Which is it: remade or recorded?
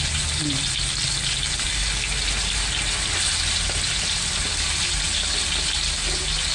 recorded